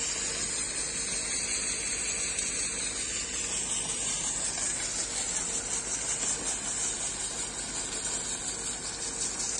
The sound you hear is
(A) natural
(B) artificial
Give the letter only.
A